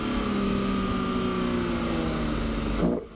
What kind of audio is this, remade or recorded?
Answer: recorded